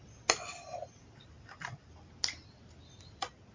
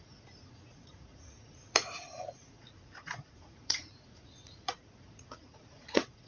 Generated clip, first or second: second